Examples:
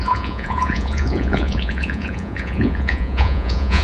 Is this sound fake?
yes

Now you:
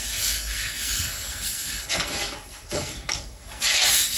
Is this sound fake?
yes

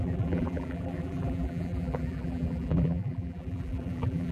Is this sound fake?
yes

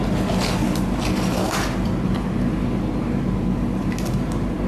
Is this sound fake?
no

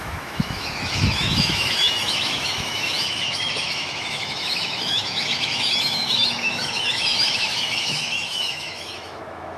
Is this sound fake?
yes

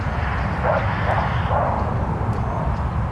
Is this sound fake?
no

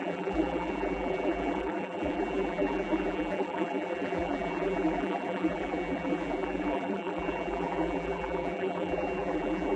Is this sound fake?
yes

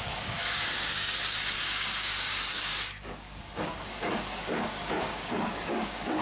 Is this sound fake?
yes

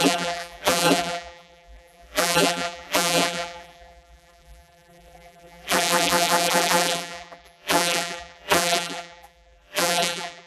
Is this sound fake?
yes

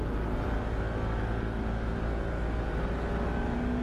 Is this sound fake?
no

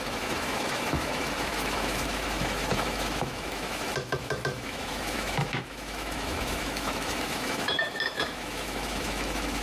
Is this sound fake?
yes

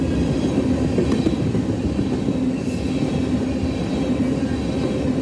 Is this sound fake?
no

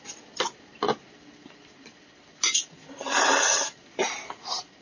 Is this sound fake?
no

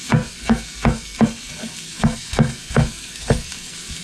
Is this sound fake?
yes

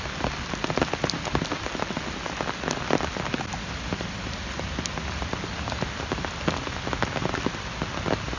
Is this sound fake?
no